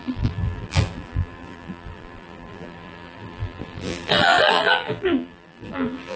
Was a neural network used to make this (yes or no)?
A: yes